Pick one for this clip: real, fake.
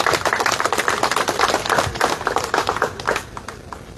fake